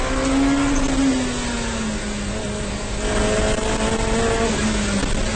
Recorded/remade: recorded